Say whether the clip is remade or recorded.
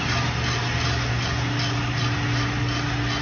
recorded